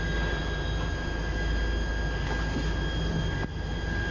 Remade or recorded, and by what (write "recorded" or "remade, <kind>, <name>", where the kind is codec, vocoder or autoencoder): recorded